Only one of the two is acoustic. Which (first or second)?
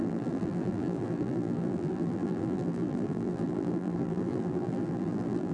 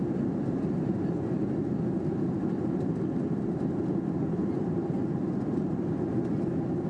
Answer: second